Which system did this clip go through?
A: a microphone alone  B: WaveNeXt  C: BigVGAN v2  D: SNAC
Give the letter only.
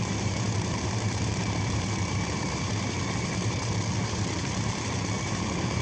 C